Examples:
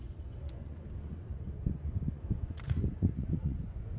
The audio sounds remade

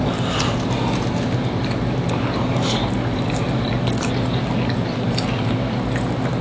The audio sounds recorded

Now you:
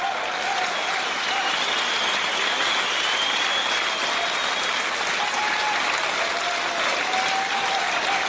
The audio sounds recorded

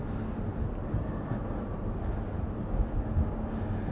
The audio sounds recorded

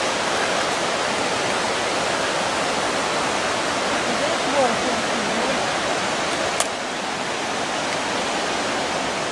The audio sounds recorded